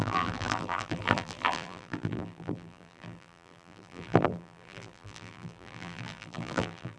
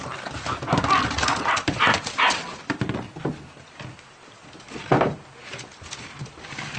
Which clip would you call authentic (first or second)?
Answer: second